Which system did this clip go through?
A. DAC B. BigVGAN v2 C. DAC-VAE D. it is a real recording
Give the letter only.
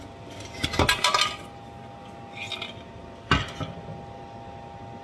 D